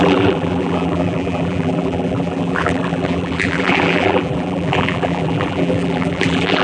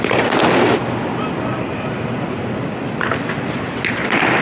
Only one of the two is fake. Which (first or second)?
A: first